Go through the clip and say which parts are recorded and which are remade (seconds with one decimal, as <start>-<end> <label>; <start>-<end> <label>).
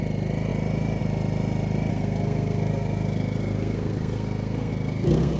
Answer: 0.0-1.9 recorded; 1.9-5.4 remade